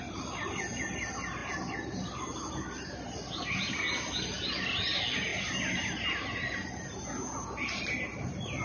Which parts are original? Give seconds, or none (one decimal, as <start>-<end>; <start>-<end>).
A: 0.0-8.6